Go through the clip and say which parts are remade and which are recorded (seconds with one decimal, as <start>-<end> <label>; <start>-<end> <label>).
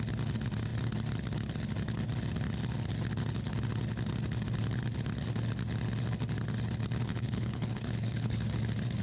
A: 0.0-7.1 recorded; 7.1-8.4 remade; 8.4-9.0 recorded